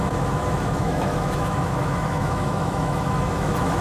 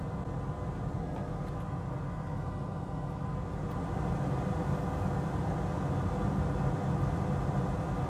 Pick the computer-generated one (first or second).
first